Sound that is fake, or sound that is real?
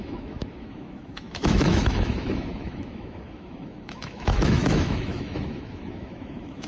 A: fake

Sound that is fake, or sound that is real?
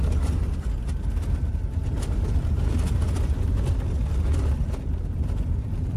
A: real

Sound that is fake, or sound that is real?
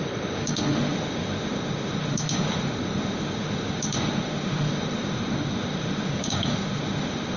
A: fake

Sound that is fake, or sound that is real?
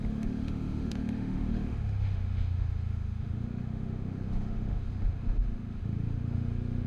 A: fake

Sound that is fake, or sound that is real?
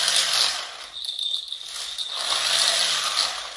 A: real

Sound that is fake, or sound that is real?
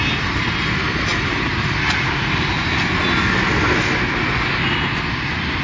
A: real